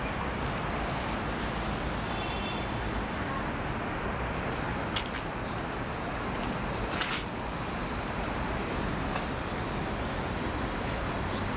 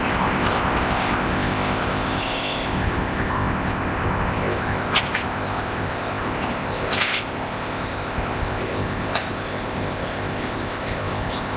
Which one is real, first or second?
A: first